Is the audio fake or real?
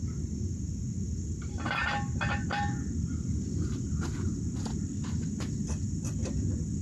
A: real